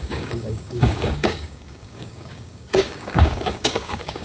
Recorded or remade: remade